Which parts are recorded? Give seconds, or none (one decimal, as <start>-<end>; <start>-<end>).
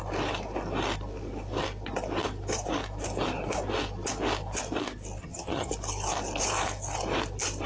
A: 0.0-5.2; 5.7-7.7